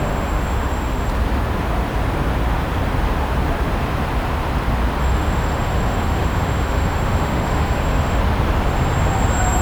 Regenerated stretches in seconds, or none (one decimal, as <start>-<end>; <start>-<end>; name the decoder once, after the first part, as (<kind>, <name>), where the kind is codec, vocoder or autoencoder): 0.0-1.1 (autoencoder, DAC-VAE); 5.0-8.2